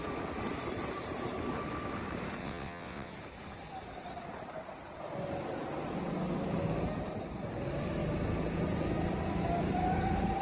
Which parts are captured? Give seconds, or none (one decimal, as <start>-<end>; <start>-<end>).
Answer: 0.0-2.4; 3.1-10.4